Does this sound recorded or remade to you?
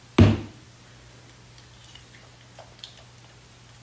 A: recorded